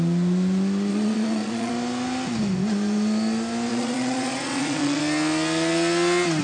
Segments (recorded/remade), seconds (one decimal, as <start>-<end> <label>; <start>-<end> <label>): 0.0-0.9 recorded; 0.9-1.7 remade; 1.7-3.7 recorded; 3.7-5.0 remade; 5.0-6.4 recorded